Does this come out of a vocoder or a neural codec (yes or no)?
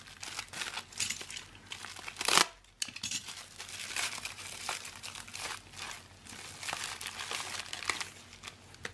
no